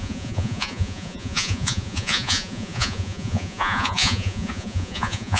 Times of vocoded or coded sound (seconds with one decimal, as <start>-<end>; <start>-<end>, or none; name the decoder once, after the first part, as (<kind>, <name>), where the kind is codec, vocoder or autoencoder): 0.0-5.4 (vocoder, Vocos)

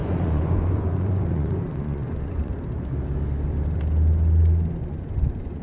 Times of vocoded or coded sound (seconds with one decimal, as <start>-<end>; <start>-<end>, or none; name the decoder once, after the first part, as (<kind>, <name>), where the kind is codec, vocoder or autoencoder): 0.0-2.6 (vocoder, Vocos); 4.8-5.6

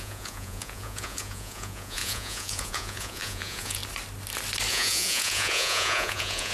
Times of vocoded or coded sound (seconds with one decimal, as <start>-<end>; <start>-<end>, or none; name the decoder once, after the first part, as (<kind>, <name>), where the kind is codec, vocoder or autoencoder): 0.0-3.8 (vocoder, Vocos); 4.7-6.5